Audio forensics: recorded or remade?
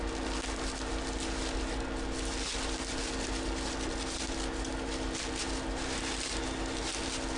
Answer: recorded